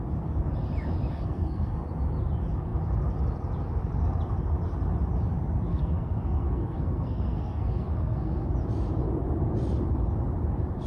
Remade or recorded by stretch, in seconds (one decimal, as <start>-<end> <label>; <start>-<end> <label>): 0.0-1.1 recorded; 1.1-1.8 remade; 1.8-5.7 recorded; 5.7-8.5 remade; 8.5-10.9 recorded